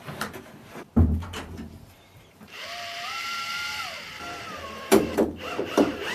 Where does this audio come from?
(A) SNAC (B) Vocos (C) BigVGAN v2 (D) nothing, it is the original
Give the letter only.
C